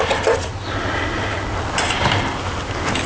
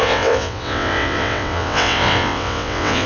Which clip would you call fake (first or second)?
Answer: second